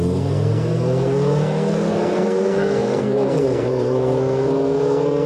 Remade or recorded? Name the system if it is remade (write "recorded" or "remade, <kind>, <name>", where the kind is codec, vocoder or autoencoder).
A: remade, codec, SNAC